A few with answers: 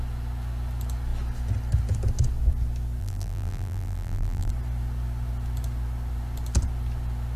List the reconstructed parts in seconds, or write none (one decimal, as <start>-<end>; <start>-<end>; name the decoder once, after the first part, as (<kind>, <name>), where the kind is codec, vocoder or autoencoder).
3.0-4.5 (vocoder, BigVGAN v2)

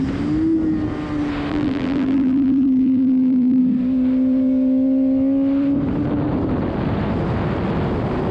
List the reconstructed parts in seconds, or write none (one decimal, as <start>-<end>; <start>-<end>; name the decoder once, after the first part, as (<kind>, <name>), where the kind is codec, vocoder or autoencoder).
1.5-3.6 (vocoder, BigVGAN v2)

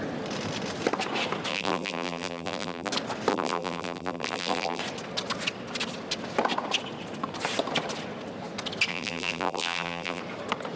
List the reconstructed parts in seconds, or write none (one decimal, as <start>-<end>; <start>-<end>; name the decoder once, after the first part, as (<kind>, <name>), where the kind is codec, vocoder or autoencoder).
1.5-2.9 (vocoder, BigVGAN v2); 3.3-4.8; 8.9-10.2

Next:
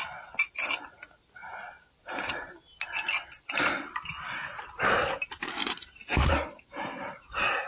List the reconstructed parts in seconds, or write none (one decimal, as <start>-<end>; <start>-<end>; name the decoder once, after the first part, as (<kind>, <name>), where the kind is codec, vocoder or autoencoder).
5.6-6.3 (vocoder, BigVGAN v2)

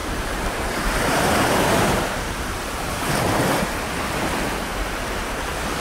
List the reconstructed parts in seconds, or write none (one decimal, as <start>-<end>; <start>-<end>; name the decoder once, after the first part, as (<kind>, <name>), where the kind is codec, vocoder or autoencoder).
0.0-3.1 (vocoder, BigVGAN v2)

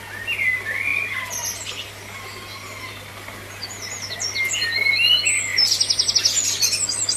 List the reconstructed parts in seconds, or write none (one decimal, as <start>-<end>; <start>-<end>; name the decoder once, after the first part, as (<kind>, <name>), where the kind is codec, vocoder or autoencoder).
0.9-2.9 (vocoder, BigVGAN v2); 5.5-6.1

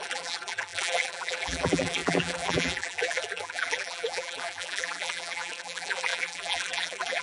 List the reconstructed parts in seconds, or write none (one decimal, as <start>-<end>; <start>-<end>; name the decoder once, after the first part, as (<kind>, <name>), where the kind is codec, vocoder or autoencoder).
0.0-7.2 (vocoder, BigVGAN v2)

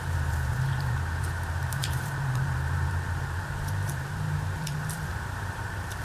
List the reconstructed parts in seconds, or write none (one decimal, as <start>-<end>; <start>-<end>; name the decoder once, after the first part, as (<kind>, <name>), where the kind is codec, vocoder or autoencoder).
0.0-6.0 (vocoder, BigVGAN v2)